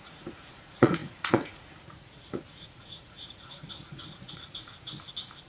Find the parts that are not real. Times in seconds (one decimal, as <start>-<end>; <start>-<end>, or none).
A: 0.0-4.7